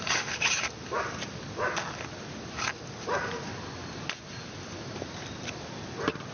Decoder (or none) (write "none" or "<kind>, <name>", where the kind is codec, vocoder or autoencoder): none